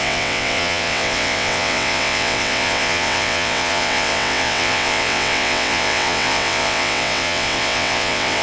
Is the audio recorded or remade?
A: remade